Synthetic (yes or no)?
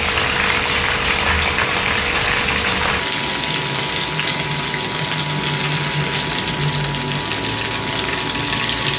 no